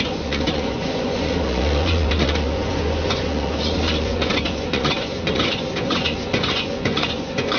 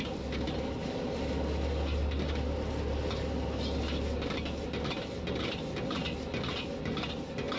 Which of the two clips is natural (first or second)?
second